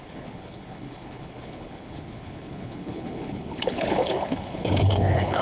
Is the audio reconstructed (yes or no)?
yes